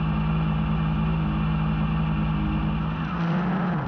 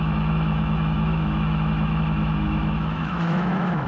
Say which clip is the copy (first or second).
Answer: second